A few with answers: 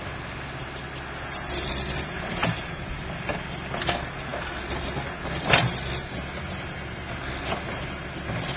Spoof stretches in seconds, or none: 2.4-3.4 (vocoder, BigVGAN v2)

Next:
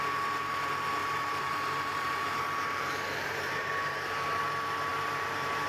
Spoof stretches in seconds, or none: 1.0-4.4 (vocoder, BigVGAN v2); 4.9-5.7

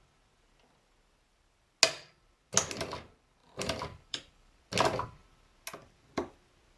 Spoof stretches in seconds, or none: 3.4-4.6 (vocoder, BigVGAN v2)

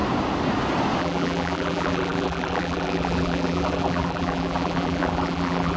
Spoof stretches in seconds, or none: 1.0-5.8 (vocoder, BigVGAN v2)

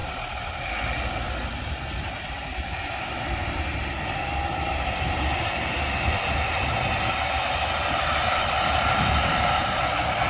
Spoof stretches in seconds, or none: 0.7-3.4 (vocoder, BigVGAN v2); 8.4-10.3

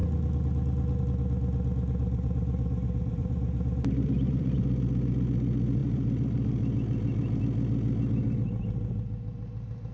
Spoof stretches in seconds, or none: 2.0-4.6 (vocoder, BigVGAN v2); 5.8-7.4